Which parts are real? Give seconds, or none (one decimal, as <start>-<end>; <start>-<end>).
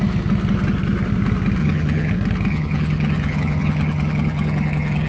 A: 0.0-1.6; 2.1-2.5